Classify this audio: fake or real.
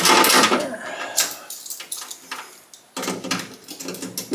real